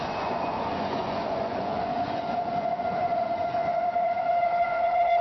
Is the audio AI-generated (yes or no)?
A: yes